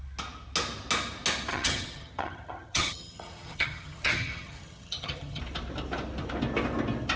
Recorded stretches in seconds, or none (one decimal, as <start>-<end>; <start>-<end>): 0.0-1.5; 5.4-7.2